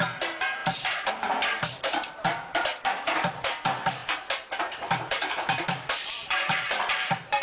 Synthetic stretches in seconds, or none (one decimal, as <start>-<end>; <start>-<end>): 0.0-0.6; 1.1-7.4